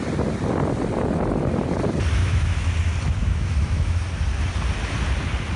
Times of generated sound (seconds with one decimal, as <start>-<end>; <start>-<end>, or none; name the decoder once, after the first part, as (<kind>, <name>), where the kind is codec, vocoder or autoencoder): 2.2-2.7 (autoencoder, DAC-VAE); 3.2-4.0